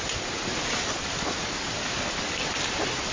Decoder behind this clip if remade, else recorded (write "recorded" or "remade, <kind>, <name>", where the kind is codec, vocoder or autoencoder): recorded